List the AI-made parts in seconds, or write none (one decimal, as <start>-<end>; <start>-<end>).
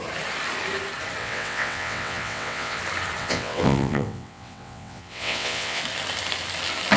1.2-2.8; 3.2-5.8